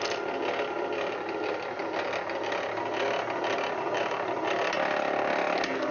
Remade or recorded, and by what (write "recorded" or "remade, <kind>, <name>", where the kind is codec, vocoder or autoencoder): recorded